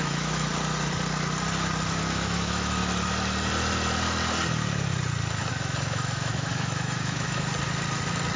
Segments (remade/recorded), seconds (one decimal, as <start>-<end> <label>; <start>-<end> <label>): 0.0-0.5 remade; 0.5-2.0 recorded; 2.0-2.8 remade; 2.8-5.5 recorded; 5.5-7.5 remade; 7.5-8.4 recorded